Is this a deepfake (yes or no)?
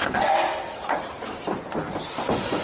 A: no